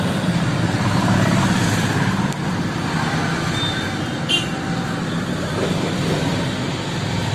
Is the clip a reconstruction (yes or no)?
no